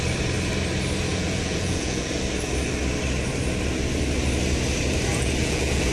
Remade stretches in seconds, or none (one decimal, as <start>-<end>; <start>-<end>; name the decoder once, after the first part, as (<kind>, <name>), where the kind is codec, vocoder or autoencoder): 1.1-2.1 (vocoder, Vocos); 5.1-5.9